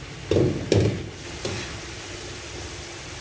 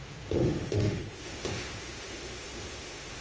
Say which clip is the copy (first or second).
second